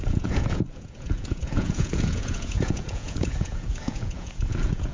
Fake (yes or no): yes